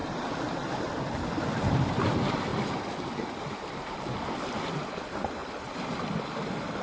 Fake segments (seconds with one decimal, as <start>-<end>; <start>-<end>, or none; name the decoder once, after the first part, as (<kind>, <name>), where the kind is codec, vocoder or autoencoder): 0.0-1.1 (vocoder, BigVGAN v2); 5.4-6.1